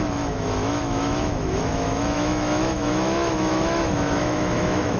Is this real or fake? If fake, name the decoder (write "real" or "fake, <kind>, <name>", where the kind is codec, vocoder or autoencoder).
fake, autoencoder, DAC-VAE